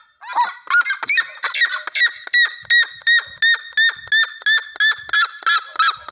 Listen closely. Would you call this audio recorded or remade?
recorded